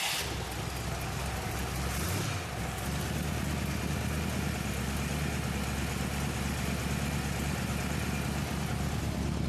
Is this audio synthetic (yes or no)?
no